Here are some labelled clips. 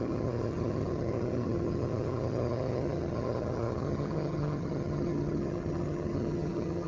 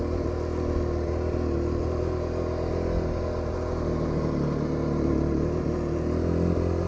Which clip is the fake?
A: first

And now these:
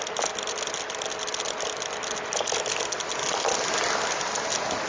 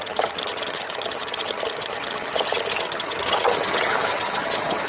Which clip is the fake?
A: second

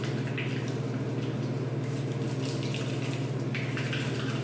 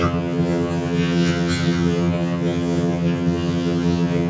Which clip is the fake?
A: second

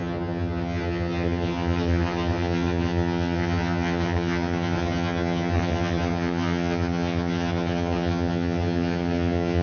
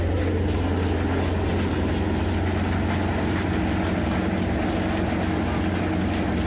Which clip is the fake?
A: first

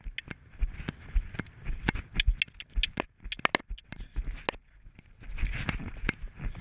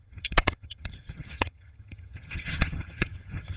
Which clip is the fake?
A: second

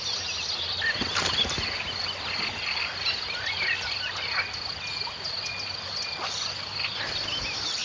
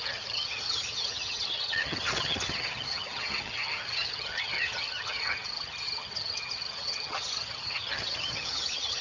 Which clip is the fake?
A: second